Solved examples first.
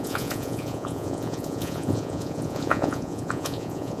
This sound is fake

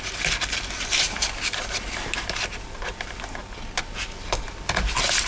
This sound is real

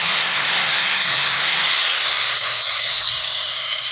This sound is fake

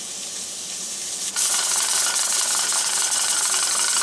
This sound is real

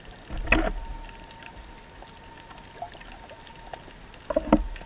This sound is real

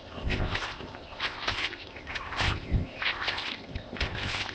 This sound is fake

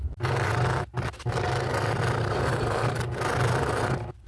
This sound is real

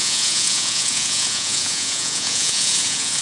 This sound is fake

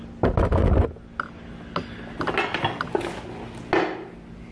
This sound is real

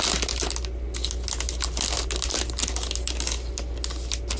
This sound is real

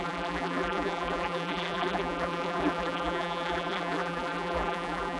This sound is fake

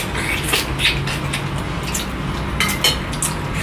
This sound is real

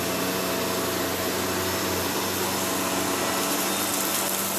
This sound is real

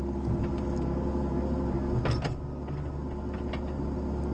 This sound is real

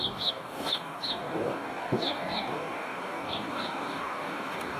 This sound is fake